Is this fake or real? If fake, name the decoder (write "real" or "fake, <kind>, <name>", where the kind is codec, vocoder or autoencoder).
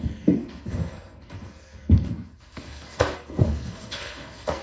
fake, codec, SNAC